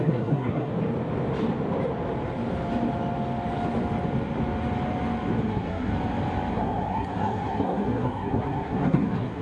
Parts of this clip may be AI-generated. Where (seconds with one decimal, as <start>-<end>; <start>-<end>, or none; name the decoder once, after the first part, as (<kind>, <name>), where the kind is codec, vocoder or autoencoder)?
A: 0.0-0.7 (codec, SNAC); 5.4-5.9; 6.5-9.4